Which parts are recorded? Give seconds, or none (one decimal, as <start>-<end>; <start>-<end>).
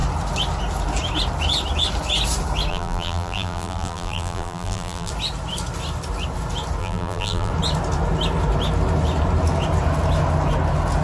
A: 0.0-2.7; 5.1-6.8; 7.5-11.0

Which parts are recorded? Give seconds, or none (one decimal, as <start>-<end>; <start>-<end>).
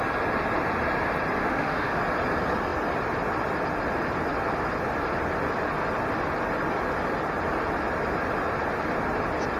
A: 0.0-1.4; 2.0-9.6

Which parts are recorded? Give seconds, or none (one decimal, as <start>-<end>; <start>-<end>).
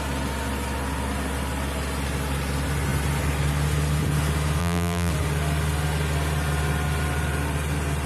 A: 0.0-4.6; 5.1-8.1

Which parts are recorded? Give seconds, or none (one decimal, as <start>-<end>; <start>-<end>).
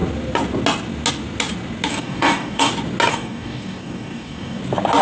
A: 0.0-1.9; 2.7-3.1; 4.6-5.0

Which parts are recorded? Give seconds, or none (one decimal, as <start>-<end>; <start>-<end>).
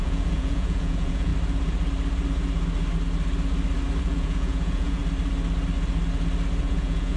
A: 1.3-4.0; 5.0-6.6